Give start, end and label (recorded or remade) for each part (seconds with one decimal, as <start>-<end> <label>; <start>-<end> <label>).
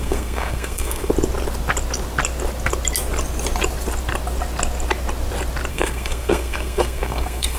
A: 0.0-1.1 remade; 1.1-5.7 recorded; 5.7-7.6 remade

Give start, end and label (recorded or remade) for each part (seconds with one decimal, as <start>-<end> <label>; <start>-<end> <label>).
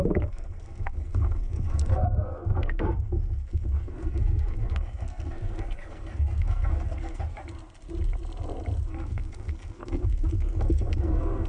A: 0.0-7.4 remade; 7.4-8.9 recorded; 8.9-11.5 remade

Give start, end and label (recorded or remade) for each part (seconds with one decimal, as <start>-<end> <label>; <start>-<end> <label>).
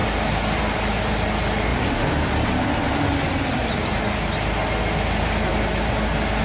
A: 0.0-6.4 recorded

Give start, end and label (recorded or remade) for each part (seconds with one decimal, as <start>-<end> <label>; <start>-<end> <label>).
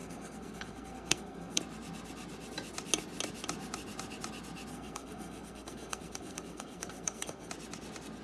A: 0.0-1.6 remade; 1.6-4.7 recorded; 4.7-7.5 remade; 7.5-8.2 recorded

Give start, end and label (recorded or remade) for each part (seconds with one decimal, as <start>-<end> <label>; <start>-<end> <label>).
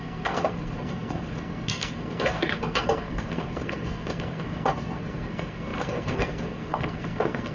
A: 0.0-7.5 remade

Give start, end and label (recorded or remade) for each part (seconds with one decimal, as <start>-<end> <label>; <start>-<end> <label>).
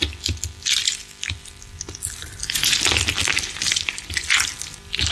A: 0.0-5.1 recorded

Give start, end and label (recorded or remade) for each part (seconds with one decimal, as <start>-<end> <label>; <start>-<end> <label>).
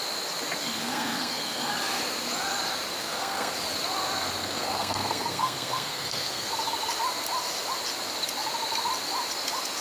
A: 0.0-0.6 recorded; 0.6-1.7 remade; 1.7-3.0 recorded; 3.0-3.5 remade; 3.5-4.4 recorded; 4.4-6.5 remade; 6.5-9.8 recorded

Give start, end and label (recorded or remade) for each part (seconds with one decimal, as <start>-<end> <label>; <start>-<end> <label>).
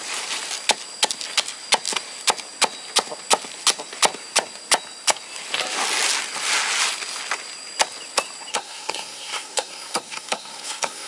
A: 0.0-8.5 recorded; 8.5-11.1 remade